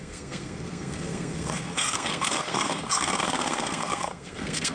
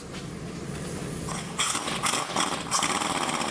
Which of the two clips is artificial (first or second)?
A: first